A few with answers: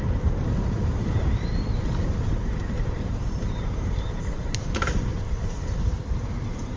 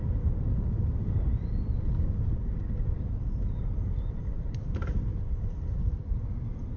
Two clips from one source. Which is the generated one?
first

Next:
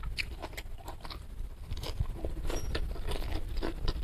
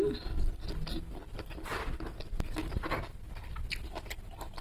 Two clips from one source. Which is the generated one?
first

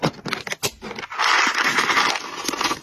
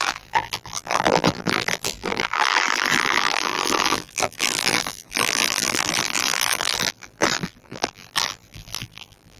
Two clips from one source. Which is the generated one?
second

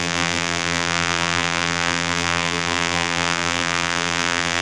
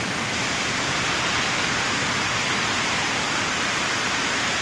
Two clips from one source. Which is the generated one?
first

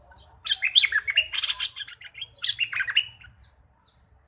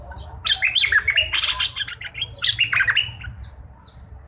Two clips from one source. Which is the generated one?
first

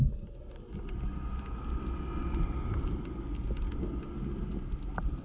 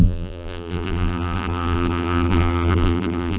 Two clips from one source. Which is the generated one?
second